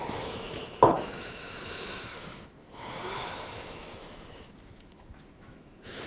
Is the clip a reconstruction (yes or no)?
yes